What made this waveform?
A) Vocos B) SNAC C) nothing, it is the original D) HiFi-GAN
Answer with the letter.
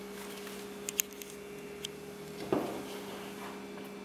C